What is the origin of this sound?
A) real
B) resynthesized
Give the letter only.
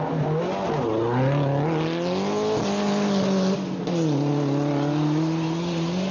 A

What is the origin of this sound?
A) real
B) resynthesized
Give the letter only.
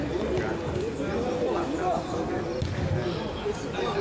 A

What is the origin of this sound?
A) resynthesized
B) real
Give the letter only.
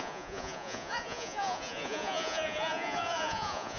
A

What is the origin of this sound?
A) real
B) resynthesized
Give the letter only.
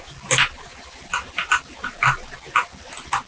A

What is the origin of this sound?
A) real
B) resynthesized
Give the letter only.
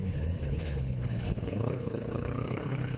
B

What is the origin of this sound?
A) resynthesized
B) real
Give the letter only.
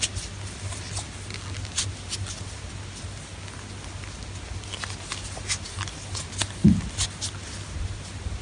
B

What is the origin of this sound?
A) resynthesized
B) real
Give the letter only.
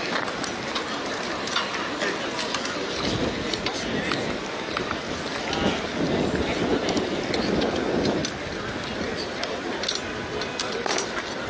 B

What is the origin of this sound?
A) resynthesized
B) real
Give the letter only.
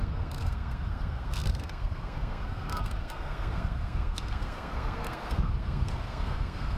A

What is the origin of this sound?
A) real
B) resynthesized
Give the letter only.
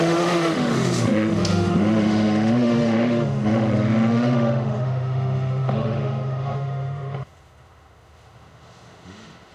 B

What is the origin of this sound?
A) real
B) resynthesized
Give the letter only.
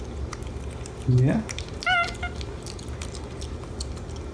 A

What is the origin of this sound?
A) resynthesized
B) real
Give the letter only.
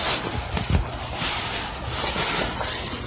B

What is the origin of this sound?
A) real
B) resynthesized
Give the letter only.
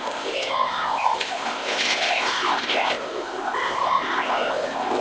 B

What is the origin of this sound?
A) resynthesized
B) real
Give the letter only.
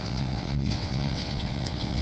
A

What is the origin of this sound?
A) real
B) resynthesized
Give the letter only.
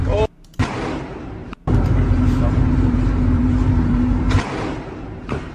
B